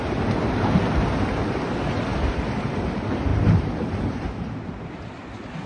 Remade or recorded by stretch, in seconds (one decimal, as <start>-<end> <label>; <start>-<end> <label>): 0.0-2.1 recorded; 2.1-2.7 remade; 2.7-5.7 recorded